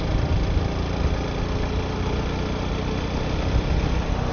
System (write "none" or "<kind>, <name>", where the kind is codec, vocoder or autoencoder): none